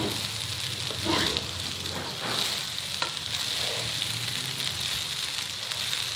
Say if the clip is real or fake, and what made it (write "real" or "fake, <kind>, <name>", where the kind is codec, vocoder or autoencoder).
real